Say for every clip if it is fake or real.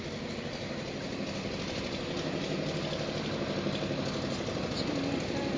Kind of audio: real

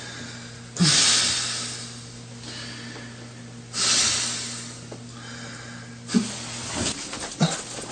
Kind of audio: real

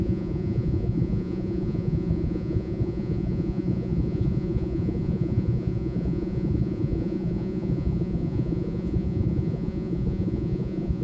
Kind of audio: fake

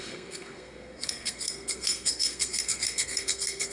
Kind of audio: fake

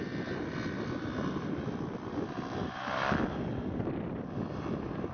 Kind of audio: real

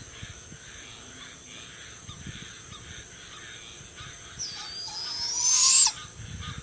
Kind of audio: real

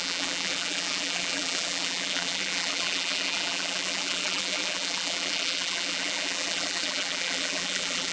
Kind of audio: fake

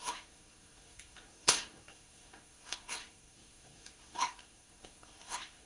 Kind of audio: fake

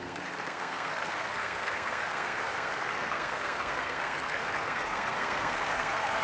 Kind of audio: fake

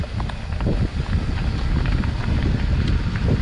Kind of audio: real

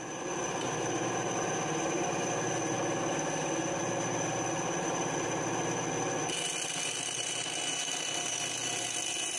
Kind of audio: real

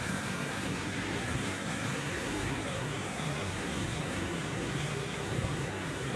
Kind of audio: fake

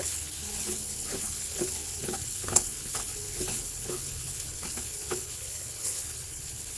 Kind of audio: fake